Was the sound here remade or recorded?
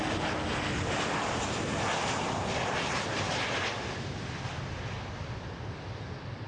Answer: recorded